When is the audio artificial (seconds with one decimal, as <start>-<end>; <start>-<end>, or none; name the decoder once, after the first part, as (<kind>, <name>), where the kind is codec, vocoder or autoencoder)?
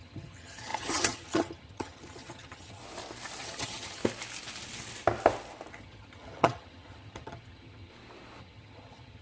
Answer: 0.0-2.8 (vocoder, HiFi-GAN); 3.4-4.0; 5.7-7.9; 8.4-9.2